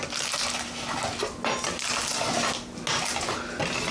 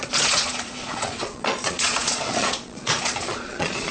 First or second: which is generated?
second